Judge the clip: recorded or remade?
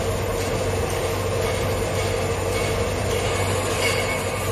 recorded